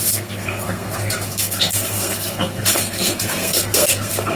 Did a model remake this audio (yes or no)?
yes